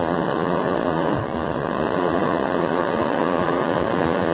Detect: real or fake fake